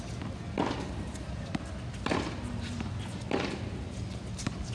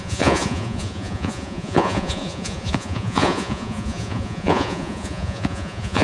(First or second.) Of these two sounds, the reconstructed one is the second